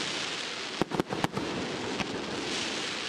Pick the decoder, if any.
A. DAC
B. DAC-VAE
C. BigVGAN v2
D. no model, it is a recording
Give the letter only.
D